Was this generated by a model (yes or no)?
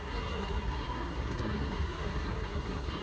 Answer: yes